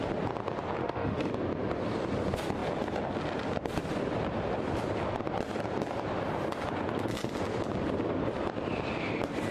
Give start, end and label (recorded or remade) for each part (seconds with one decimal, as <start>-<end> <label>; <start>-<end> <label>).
0.0-0.8 recorded; 0.8-1.3 remade; 1.3-9.5 recorded